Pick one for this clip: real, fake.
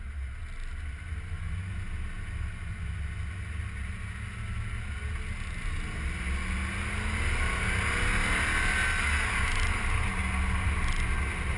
real